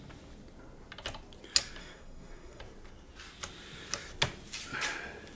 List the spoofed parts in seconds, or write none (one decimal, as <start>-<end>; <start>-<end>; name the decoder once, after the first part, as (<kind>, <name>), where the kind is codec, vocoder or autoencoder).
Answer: 1.8-2.6 (codec, SNAC)